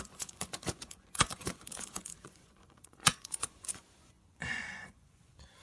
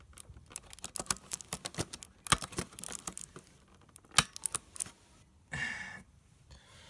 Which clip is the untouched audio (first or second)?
second